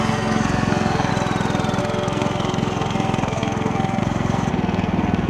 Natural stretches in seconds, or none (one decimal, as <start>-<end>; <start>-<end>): 1.1-1.8